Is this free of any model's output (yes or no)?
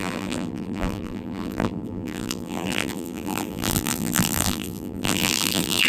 no